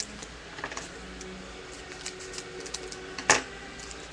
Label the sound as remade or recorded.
recorded